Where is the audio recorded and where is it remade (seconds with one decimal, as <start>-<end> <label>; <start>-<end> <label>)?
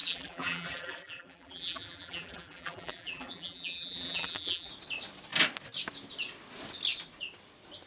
0.0-4.7 remade; 4.7-7.9 recorded